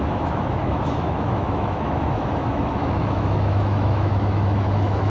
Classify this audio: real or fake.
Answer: fake